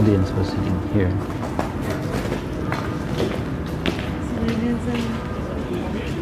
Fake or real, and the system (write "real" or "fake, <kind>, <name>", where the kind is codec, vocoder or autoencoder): real